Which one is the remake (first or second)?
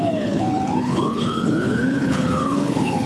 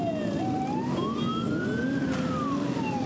first